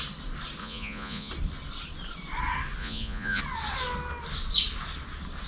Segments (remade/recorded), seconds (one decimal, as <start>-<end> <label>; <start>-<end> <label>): 0.0-0.6 recorded; 0.6-1.3 remade; 1.3-2.8 recorded; 2.8-3.4 remade; 3.4-5.5 recorded